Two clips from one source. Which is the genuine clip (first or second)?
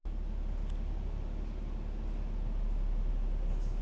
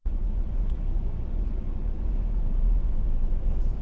first